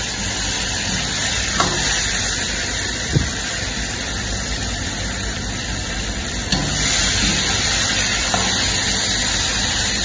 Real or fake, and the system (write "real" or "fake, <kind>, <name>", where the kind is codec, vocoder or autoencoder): fake, vocoder, BigVGAN v2